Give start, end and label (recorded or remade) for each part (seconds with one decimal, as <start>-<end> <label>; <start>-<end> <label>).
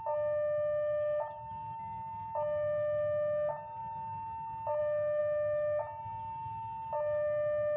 0.0-7.8 recorded